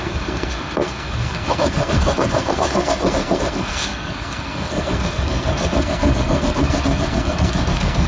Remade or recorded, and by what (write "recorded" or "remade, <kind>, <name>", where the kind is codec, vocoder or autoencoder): remade, codec, SNAC